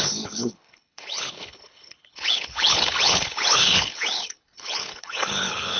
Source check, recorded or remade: remade